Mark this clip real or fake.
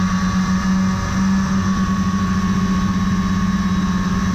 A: real